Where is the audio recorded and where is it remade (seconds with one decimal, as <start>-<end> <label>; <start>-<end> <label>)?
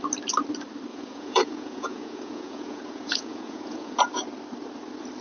0.0-0.9 recorded; 0.9-4.0 remade; 4.0-5.2 recorded